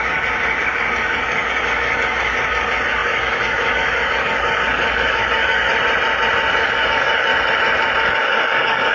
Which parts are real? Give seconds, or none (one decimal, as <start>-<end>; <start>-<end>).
5.7-6.5; 7.3-8.0